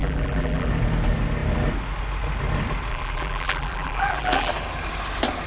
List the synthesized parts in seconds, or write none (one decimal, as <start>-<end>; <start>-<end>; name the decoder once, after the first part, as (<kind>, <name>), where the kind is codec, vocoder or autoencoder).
0.0-0.7 (vocoder, BigVGAN v2); 2.9-4.5